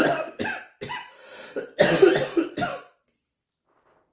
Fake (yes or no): no